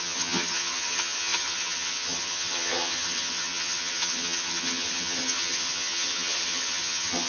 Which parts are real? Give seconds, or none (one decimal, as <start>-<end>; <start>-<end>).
none

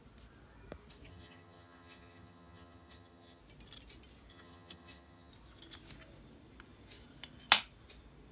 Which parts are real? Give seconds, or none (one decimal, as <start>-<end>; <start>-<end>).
0.0-1.1; 3.4-4.3; 5.3-8.3

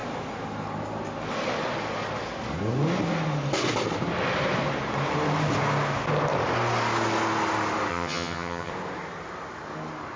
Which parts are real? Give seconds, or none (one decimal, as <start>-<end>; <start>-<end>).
0.0-7.9; 8.7-10.2

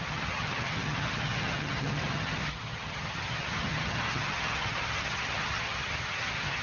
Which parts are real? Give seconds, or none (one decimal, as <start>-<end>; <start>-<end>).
none

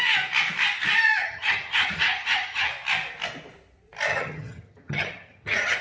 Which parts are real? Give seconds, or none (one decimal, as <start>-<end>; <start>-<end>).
0.0-1.2; 2.7-4.1

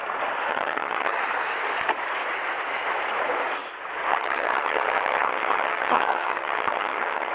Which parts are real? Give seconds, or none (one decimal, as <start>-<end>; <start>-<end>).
0.0-0.5; 1.2-4.1

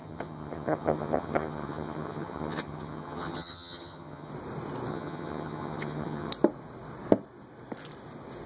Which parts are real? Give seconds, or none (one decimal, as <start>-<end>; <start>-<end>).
4.3-4.9; 6.3-8.5

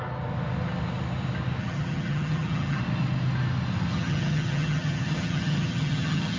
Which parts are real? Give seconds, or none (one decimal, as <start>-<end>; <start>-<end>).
0.0-1.6; 2.8-3.9